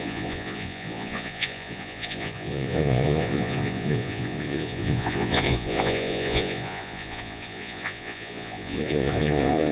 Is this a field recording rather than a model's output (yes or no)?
no